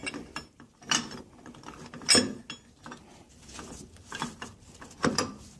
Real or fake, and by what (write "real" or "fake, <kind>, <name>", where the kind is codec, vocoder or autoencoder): real